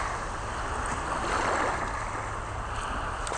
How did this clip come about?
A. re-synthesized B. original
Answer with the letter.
B